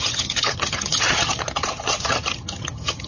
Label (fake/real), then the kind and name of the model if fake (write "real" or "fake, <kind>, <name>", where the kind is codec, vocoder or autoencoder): fake, vocoder, HiFi-GAN